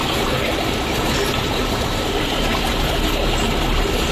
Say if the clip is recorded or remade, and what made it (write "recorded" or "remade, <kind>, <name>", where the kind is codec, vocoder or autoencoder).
recorded